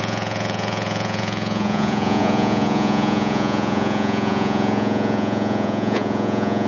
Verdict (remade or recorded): remade